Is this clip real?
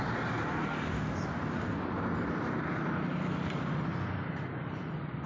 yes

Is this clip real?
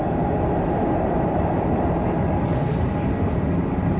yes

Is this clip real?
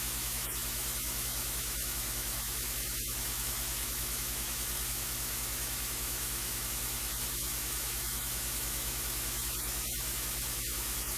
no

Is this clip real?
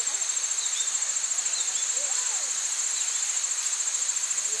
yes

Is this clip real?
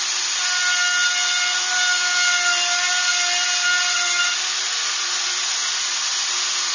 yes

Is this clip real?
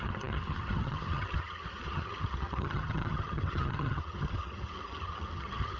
no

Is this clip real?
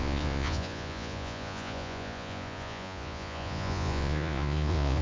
no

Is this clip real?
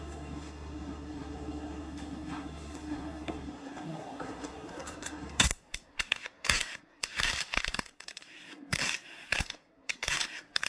no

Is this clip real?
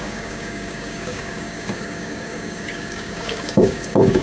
no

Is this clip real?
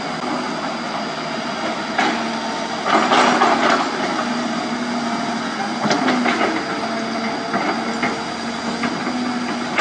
yes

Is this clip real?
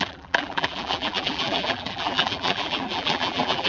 no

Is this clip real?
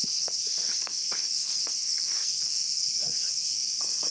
no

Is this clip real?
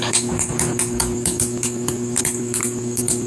no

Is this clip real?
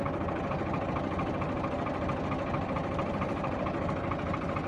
no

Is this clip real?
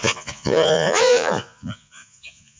no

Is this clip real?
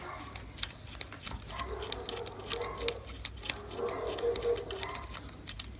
yes